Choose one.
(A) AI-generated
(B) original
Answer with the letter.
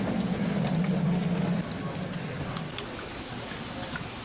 B